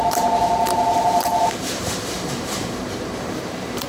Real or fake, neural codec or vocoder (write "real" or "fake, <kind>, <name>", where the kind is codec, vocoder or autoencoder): fake, vocoder, BigVGAN v2